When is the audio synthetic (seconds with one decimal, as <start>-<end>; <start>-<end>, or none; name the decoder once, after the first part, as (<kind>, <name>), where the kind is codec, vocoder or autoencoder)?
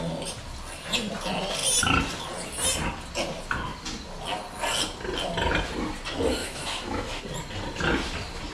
6.4-7.2 (autoencoder, DAC-VAE)